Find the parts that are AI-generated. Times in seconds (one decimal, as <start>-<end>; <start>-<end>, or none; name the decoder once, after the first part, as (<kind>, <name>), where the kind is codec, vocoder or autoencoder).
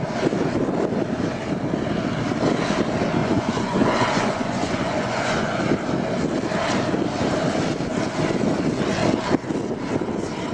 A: 3.2-5.6 (vocoder, Vocos)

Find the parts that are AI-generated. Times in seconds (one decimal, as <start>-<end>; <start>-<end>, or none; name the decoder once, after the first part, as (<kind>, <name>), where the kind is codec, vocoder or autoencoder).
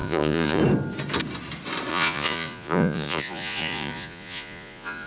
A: 0.0-0.6 (vocoder, Vocos); 1.9-5.1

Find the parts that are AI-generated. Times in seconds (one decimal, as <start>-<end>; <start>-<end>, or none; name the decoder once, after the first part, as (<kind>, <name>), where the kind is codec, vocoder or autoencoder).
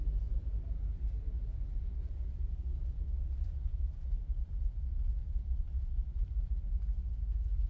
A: 5.2-6.4 (vocoder, BigVGAN v2)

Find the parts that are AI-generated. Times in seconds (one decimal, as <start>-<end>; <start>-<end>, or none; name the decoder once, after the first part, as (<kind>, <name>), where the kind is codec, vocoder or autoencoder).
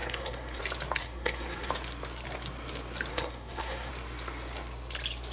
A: 0.0-0.6 (codec, SNAC); 1.0-1.7; 3.1-3.9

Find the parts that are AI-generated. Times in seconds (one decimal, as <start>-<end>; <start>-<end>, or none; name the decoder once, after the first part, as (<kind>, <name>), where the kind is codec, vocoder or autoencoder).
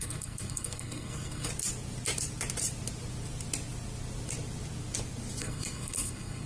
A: 0.0-1.5 (codec, SNAC); 5.4-6.5